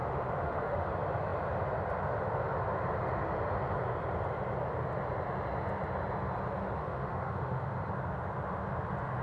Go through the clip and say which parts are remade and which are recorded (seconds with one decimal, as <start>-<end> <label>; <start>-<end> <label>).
0.0-0.9 remade; 0.9-6.8 recorded; 6.8-7.9 remade; 7.9-9.2 recorded